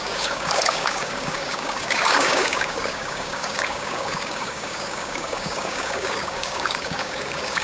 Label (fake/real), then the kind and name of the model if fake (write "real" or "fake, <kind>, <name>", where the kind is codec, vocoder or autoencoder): fake, codec, DAC